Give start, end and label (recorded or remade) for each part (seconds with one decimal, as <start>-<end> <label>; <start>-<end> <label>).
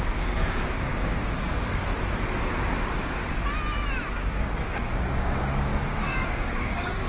0.0-1.9 remade; 1.9-4.1 recorded; 4.1-7.1 remade